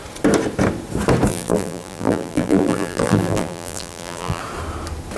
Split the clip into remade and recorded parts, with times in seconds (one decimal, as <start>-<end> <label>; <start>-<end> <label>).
0.0-1.3 recorded; 1.3-4.4 remade; 4.4-5.2 recorded